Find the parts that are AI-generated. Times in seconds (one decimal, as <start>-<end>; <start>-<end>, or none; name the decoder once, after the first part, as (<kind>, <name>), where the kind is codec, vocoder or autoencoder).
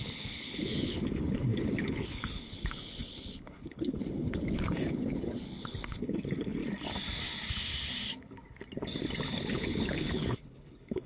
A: 0.0-6.6 (codec, HILCodec); 9.5-11.1